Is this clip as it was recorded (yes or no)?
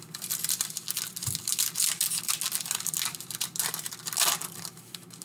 yes